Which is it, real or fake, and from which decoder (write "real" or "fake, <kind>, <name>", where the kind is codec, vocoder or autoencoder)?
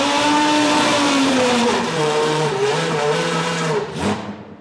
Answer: fake, vocoder, BigVGAN v2